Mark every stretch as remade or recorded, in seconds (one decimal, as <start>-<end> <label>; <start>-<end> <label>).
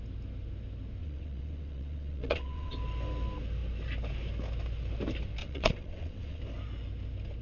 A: 0.0-1.0 recorded; 1.0-2.8 remade; 2.8-5.4 recorded; 5.4-6.4 remade; 6.4-7.4 recorded